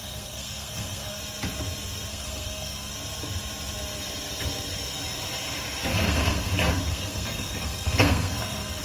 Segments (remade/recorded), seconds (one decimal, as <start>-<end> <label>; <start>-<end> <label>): 0.0-1.2 remade; 1.2-2.1 recorded; 2.1-2.9 remade; 2.9-5.9 recorded; 5.9-6.5 remade; 6.5-6.9 recorded; 6.9-8.8 remade